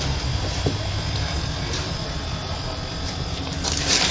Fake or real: fake